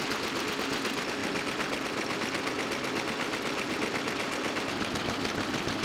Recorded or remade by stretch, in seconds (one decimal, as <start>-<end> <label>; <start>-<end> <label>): 0.0-5.8 recorded